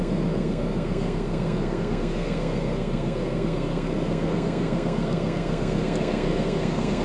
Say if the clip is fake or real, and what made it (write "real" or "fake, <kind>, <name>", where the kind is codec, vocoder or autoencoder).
fake, codec, SNAC